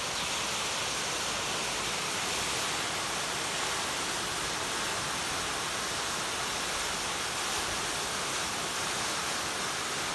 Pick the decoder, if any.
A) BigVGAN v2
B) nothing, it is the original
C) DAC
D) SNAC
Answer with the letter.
B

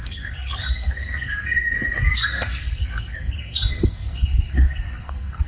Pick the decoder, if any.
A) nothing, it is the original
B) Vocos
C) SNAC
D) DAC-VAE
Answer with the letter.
C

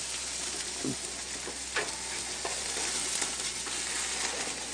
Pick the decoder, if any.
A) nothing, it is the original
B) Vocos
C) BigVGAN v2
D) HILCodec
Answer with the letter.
A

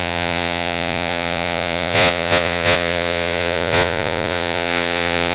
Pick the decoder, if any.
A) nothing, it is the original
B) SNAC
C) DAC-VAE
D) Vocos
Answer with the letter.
D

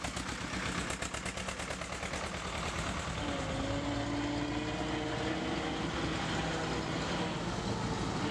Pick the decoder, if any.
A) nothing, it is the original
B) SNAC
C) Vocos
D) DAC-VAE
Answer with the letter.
A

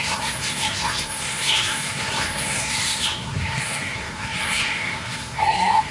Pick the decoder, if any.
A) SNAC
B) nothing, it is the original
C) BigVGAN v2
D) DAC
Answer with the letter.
A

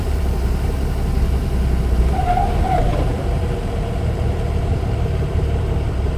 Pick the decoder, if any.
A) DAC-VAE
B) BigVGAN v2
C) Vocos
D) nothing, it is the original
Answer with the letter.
D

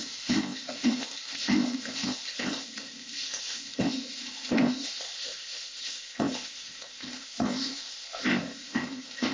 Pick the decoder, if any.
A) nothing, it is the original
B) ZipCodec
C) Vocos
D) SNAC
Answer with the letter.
B